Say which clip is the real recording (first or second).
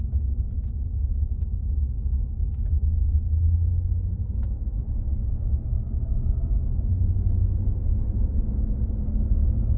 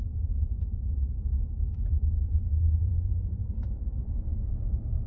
first